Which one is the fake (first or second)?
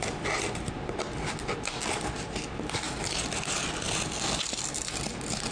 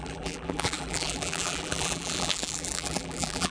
second